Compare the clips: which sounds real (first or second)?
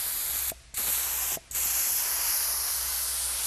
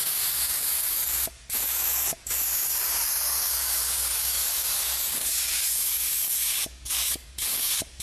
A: first